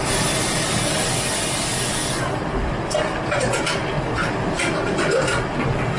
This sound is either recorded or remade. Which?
recorded